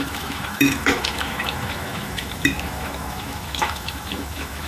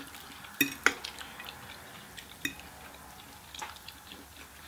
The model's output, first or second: first